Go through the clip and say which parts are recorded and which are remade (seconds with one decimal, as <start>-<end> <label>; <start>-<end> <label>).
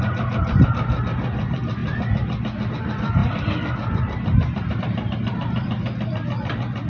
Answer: 0.0-1.8 remade; 1.8-2.7 recorded; 2.7-6.9 remade